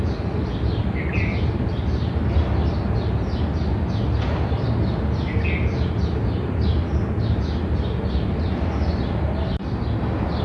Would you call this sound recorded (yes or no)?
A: yes